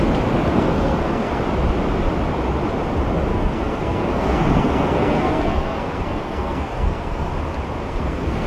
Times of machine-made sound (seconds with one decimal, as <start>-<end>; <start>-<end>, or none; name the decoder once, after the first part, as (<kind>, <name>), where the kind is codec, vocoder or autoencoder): 0.5-1.4 (codec, SNAC); 3.3-7.3; 7.8-8.5